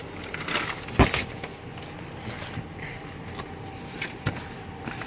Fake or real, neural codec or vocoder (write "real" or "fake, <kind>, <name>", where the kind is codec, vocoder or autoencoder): real